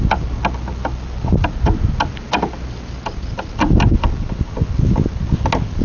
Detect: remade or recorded recorded